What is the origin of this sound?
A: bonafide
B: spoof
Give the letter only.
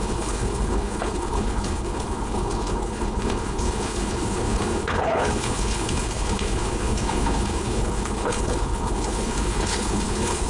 B